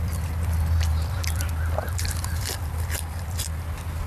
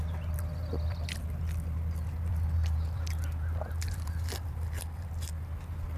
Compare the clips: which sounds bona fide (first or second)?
second